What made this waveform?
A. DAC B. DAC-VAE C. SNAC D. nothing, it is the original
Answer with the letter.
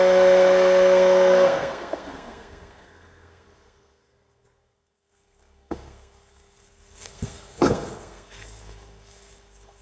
C